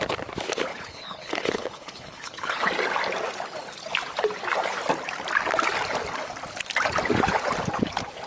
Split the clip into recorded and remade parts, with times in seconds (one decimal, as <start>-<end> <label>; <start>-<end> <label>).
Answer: 0.0-0.7 recorded; 0.7-2.7 remade; 2.7-8.3 recorded